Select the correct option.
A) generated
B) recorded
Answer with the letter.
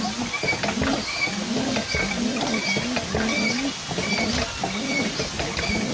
B